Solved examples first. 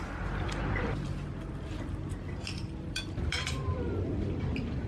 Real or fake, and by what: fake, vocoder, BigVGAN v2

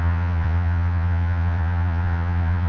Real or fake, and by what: fake, vocoder, Vocos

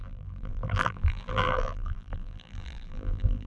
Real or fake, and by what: fake, vocoder, BigVGAN v2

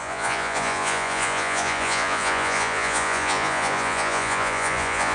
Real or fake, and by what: fake, vocoder, Vocos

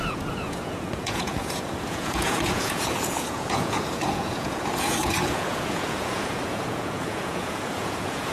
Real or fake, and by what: fake, vocoder, Vocos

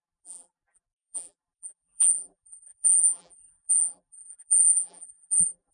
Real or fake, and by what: fake, vocoder, BigVGAN v2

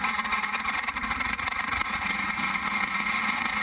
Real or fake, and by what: fake, vocoder, Vocos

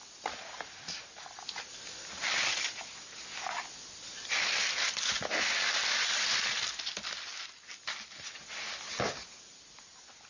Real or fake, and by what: real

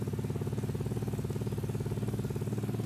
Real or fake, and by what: real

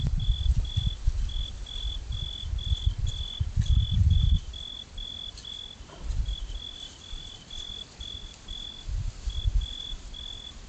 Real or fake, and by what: real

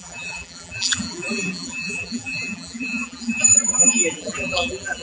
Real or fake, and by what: fake, vocoder, BigVGAN v2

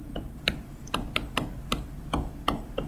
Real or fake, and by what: real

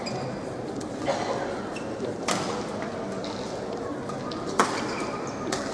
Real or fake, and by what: real